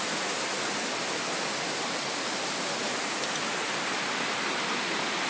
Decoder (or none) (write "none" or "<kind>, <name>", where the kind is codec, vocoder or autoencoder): none